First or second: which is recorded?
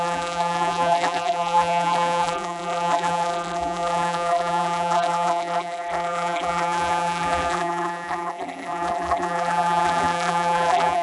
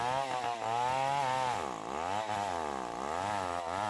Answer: second